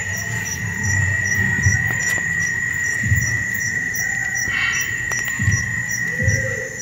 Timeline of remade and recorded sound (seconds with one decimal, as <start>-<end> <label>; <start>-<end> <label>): 0.0-6.8 remade